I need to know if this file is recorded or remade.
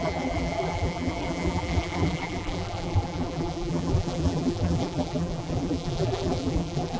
remade